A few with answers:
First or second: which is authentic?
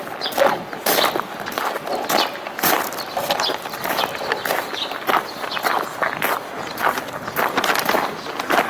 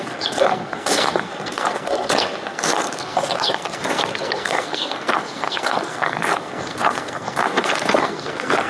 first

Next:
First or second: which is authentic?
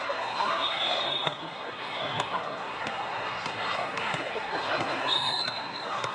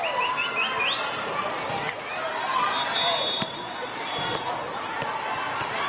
second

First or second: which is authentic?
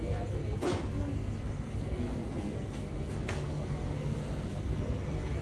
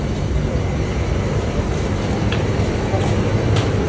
second